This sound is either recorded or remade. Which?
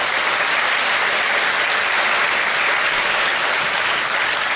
recorded